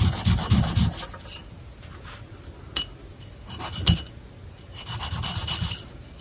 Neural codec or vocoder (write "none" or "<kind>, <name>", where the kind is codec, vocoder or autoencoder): none